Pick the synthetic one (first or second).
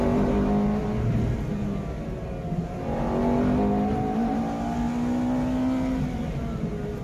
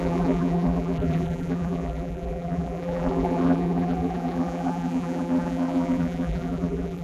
second